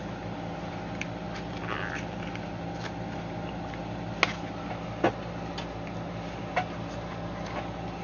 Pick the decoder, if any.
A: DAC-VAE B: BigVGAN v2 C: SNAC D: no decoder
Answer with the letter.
D